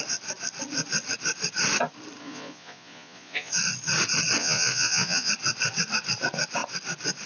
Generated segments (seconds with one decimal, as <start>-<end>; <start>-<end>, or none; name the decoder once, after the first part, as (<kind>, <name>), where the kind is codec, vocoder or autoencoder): 2.2-3.5 (vocoder, Vocos); 4.4-5.3